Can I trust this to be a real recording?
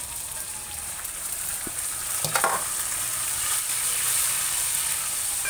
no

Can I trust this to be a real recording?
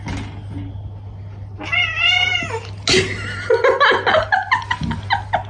yes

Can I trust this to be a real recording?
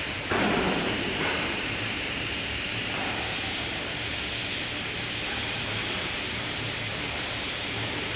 no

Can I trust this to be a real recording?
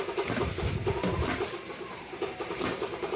no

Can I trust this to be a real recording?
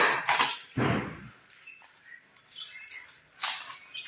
no